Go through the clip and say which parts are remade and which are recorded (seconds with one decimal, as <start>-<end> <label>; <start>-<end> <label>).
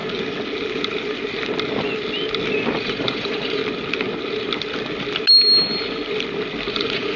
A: 0.0-2.8 recorded; 2.8-3.6 remade; 3.6-6.7 recorded; 6.7-7.2 remade